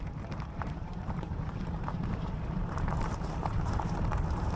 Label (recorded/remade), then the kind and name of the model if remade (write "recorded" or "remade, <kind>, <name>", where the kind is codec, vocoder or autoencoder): remade, vocoder, BigVGAN v2